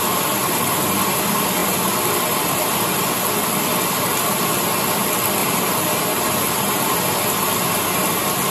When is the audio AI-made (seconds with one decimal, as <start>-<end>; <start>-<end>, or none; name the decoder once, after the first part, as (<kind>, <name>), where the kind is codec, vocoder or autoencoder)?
5.4-6.8 (vocoder, BigVGAN v2)